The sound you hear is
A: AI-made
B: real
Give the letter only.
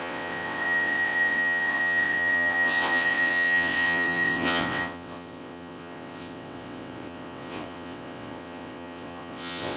A